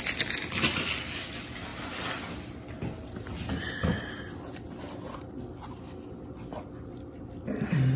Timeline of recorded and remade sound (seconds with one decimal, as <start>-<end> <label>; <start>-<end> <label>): 0.0-8.0 recorded